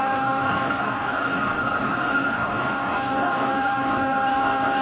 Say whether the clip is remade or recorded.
remade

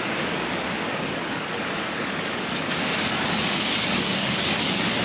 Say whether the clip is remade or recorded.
remade